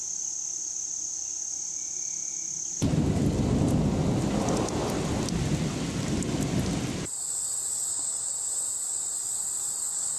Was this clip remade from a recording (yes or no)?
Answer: no